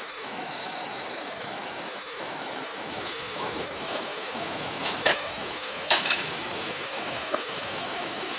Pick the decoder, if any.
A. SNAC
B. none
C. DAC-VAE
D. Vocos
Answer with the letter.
C